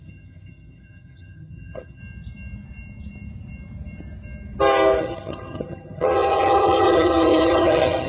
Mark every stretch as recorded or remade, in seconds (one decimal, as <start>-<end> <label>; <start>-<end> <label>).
0.0-2.0 remade; 2.0-5.0 recorded; 5.0-8.1 remade